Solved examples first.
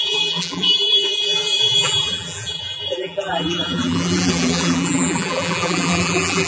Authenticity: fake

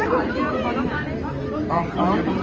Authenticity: real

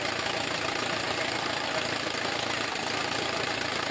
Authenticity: real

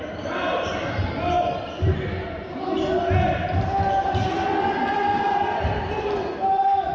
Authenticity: real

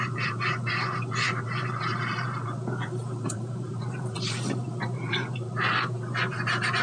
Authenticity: fake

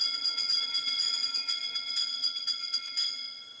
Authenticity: fake